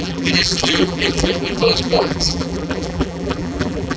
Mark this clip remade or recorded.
remade